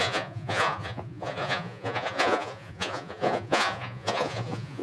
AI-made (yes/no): yes